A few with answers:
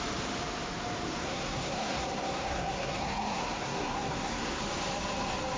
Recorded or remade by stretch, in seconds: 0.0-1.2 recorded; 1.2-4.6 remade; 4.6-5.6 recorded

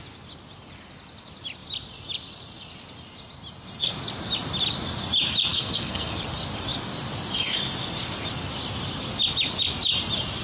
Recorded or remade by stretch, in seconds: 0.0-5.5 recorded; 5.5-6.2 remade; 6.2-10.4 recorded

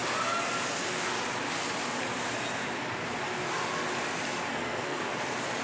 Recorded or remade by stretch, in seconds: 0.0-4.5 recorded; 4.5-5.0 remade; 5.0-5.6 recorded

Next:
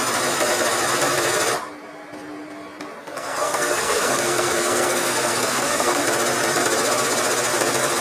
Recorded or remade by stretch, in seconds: 0.0-3.0 recorded; 3.0-6.0 remade; 6.0-8.0 recorded

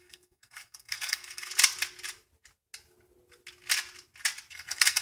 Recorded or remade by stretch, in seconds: 0.0-1.5 remade; 1.5-4.5 recorded; 4.5-5.0 remade

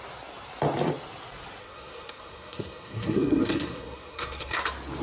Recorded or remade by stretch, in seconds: 0.0-1.6 recorded; 1.6-4.6 remade; 4.6-5.0 recorded

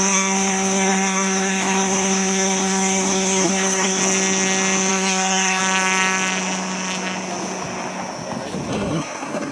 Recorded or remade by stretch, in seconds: 0.0-4.0 remade; 4.0-4.9 recorded; 4.9-5.6 remade; 5.6-8.7 recorded; 8.7-9.5 remade